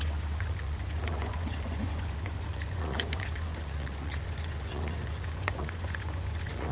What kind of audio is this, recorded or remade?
remade